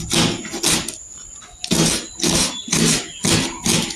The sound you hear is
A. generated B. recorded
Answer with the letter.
B